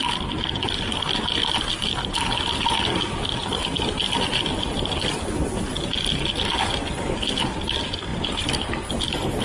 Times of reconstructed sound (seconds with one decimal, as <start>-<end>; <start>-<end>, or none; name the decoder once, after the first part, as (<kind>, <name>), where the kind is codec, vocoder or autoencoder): 8.1-8.7 (vocoder, BigVGAN v2)